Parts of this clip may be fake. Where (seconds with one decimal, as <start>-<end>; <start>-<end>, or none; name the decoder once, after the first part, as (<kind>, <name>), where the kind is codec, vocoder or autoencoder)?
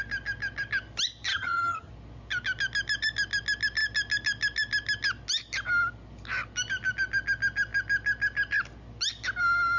1.3-1.9 (vocoder, HiFi-GAN)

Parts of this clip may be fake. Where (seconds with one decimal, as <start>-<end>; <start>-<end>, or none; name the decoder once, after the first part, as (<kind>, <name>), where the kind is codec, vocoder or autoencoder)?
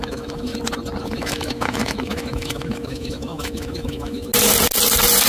0.0-0.5 (autoencoder, DAC-VAE); 1.0-4.3